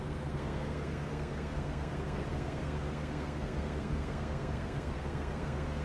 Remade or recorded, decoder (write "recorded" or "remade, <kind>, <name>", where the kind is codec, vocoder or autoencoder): remade, codec, SNAC